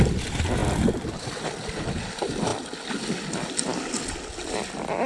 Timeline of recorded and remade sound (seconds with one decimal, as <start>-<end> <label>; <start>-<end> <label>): 0.0-5.1 recorded